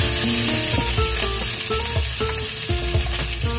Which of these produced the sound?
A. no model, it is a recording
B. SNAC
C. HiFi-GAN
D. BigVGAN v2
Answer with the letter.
A